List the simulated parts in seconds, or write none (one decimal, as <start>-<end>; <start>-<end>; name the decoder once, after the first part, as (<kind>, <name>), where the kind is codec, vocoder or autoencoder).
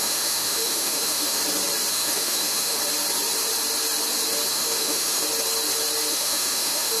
0.0-1.4 (autoencoder, DAC-VAE); 1.9-2.8; 4.5-5.2; 6.1-7.0